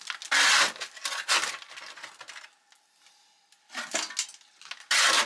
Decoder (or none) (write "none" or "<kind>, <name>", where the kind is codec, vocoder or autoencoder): none